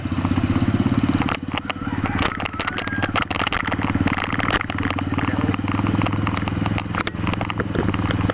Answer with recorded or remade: recorded